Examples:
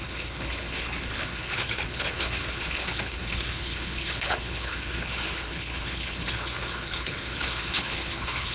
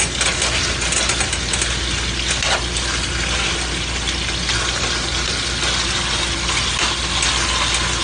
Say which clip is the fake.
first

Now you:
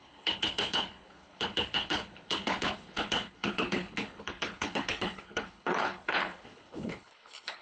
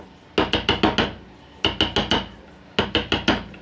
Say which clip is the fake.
first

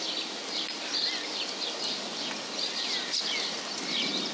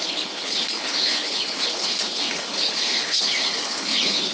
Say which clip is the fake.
second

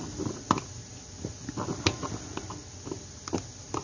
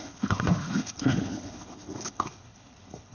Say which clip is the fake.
second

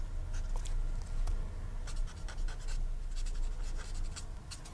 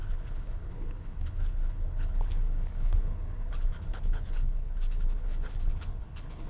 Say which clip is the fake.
second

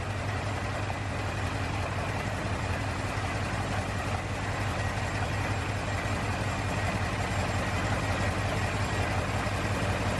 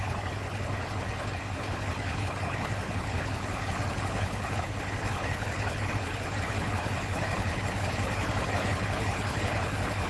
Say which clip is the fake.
second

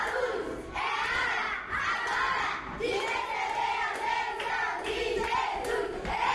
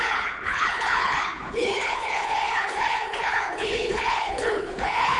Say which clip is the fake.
second